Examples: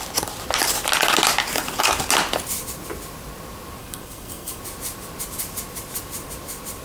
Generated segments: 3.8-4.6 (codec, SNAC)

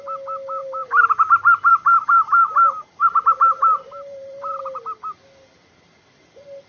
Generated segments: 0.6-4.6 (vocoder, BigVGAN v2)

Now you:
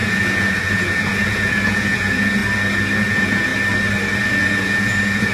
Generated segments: 0.0-2.4 (vocoder, Vocos); 3.1-3.5; 4.3-5.3